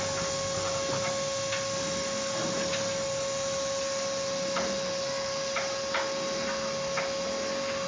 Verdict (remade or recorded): recorded